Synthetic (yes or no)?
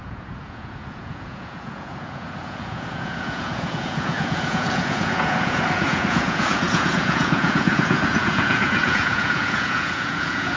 yes